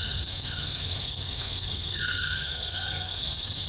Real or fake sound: fake